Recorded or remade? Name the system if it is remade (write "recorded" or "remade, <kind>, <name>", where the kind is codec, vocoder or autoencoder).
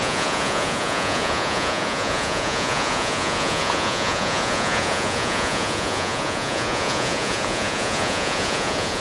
remade, vocoder, Vocos